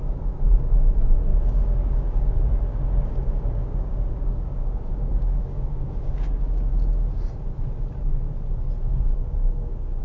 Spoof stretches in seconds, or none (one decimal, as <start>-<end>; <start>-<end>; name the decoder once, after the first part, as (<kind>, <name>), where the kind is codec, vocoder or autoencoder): 1.3-2.4 (codec, DAC); 3.1-6.7; 8.9-10.0